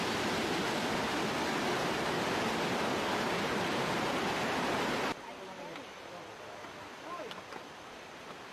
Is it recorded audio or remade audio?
recorded